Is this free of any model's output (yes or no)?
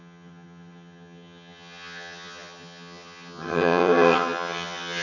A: no